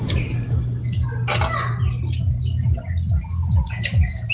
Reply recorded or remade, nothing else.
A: recorded